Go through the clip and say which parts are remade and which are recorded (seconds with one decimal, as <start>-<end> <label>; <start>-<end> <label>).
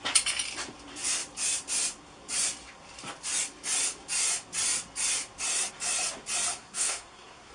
0.0-6.5 recorded; 6.5-7.5 remade